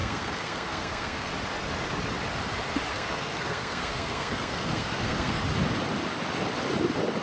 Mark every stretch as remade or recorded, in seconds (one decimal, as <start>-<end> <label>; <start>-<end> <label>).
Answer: 0.0-1.3 remade; 1.3-2.9 recorded; 2.9-5.4 remade; 5.4-7.2 recorded